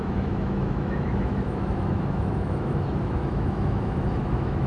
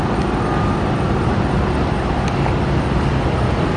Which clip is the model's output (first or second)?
first